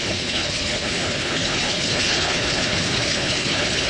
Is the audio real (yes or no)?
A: no